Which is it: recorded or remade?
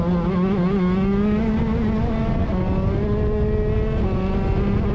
recorded